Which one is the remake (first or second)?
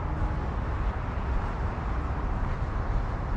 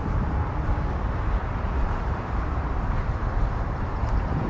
second